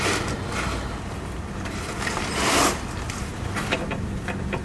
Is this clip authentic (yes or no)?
yes